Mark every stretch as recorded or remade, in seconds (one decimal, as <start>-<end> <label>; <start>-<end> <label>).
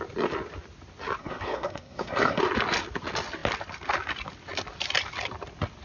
0.0-1.2 recorded; 1.2-2.4 remade; 2.4-5.8 recorded